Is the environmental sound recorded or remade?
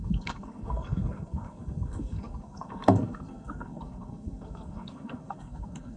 remade